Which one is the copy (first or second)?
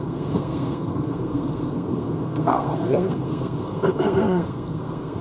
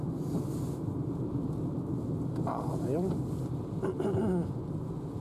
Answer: first